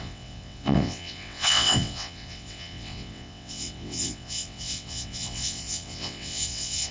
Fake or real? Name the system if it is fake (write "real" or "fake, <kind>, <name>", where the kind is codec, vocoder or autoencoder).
fake, vocoder, WaveNeXt